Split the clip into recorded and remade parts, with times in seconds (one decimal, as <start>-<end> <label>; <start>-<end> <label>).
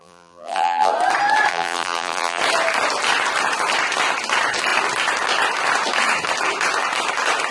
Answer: 0.0-0.9 remade; 0.9-1.5 recorded; 1.5-2.4 remade; 2.4-7.5 recorded